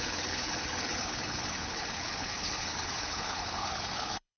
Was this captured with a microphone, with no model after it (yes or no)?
no